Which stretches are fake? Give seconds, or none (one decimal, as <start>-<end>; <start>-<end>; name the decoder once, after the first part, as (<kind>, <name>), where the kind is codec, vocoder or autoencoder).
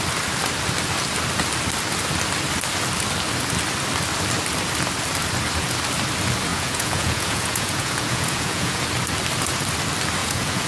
6.5-8.8 (vocoder, Vocos); 10.2-10.7